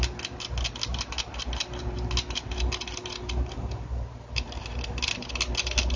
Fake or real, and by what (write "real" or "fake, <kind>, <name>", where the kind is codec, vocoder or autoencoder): real